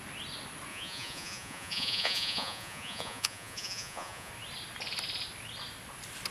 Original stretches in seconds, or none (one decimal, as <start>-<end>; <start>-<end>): 0.0-0.7; 4.3-6.3